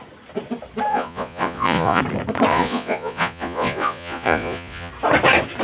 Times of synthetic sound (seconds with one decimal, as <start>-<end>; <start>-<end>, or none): 0.9-2.0; 2.5-4.9